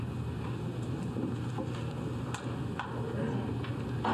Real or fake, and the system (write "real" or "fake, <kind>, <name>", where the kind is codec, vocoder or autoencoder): real